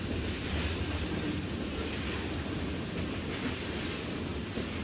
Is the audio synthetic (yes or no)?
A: no